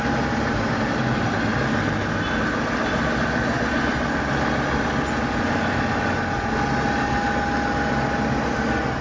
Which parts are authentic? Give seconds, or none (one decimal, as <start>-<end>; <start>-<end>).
0.0-9.0